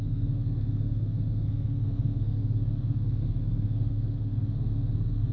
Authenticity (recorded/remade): remade